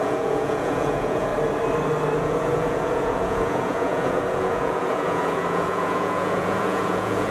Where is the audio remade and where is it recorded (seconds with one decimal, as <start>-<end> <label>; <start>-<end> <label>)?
0.0-1.3 remade; 1.3-2.2 recorded; 2.2-7.3 remade